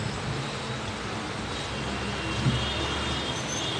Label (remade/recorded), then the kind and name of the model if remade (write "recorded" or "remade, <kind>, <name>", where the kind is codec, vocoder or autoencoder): recorded